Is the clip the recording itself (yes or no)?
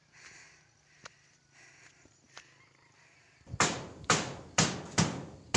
yes